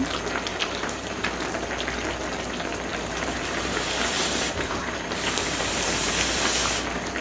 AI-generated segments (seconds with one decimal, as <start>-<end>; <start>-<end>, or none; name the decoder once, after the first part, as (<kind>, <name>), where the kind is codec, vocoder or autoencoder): 0.5-1.2 (vocoder, BigVGAN v2); 2.9-6.1